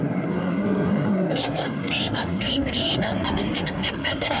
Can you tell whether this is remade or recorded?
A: remade